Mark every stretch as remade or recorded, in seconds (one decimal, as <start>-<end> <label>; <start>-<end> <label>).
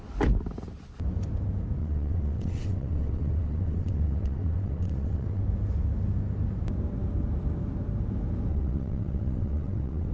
0.0-1.8 recorded; 1.8-5.4 remade; 5.4-8.5 recorded; 8.5-10.1 remade